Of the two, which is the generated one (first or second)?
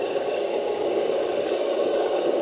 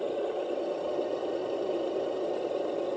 first